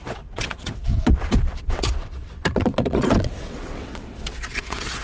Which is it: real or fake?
fake